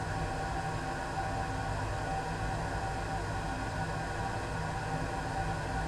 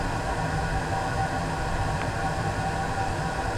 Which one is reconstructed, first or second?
second